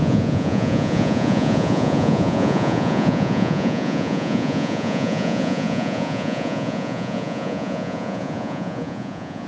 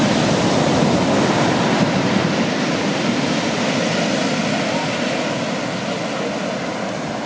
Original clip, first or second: second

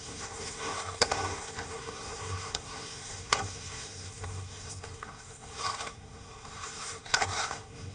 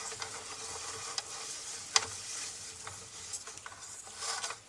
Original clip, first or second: second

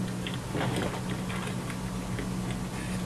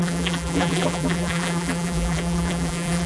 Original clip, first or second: first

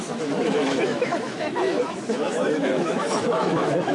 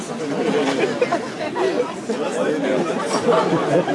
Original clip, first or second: second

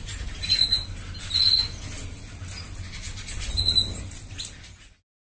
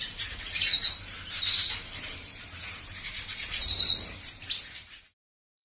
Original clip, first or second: first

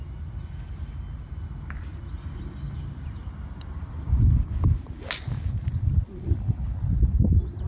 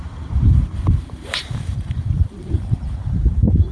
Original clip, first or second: first